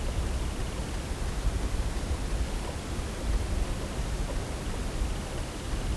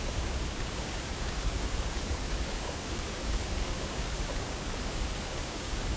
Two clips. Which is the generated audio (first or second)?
second